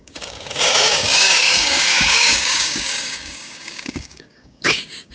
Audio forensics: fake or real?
fake